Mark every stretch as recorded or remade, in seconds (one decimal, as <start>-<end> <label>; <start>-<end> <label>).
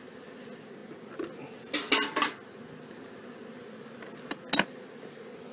0.0-5.5 recorded